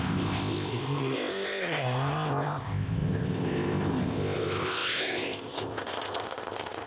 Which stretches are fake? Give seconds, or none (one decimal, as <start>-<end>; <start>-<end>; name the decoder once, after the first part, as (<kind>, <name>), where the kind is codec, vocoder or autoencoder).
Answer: 0.0-6.9 (codec, ZipCodec)